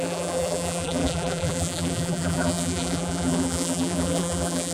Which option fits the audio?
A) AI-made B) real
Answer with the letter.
A